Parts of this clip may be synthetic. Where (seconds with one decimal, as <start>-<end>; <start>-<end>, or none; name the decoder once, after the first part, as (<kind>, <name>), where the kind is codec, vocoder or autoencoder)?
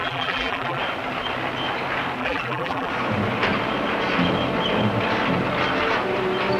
0.0-0.8 (vocoder, BigVGAN v2); 2.2-2.9